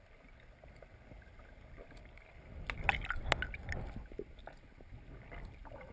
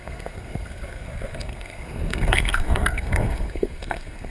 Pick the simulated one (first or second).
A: second